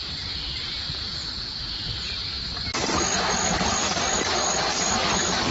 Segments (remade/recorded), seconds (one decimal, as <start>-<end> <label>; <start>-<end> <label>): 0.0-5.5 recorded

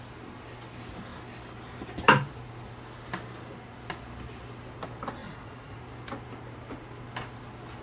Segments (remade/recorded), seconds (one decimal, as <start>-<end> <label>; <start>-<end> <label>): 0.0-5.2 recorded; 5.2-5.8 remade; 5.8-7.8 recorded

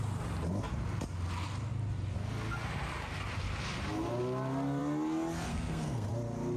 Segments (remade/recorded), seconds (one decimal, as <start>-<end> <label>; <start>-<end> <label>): 0.0-5.5 recorded; 5.5-6.1 remade; 6.1-6.6 recorded

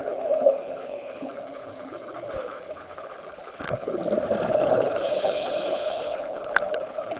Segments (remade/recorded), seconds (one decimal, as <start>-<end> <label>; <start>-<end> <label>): 0.0-4.0 remade; 4.0-4.5 recorded; 4.5-7.2 remade

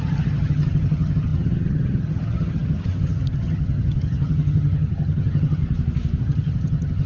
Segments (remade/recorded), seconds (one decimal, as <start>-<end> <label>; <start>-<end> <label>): 0.0-5.6 remade; 5.6-6.2 recorded; 6.2-7.1 remade

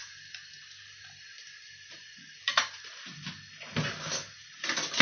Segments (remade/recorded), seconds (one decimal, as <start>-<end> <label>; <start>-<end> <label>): 0.0-3.0 remade; 3.0-5.0 recorded